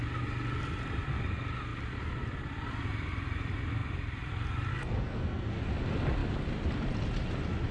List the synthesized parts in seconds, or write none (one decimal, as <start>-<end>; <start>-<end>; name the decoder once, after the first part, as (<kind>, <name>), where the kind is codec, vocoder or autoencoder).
4.7-5.6 (codec, SNAC)